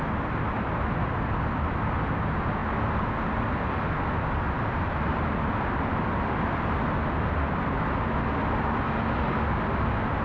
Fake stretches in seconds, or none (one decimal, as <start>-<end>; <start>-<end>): none